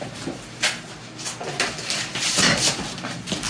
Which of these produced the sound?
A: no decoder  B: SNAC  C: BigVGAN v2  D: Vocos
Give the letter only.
A